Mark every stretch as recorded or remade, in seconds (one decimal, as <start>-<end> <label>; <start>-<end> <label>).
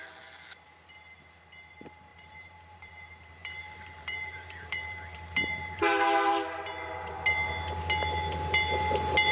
0.0-2.1 recorded; 2.1-7.1 remade; 7.1-9.3 recorded